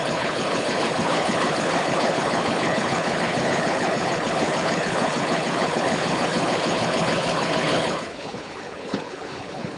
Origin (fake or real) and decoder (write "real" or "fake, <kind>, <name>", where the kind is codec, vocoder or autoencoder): fake, codec, HILCodec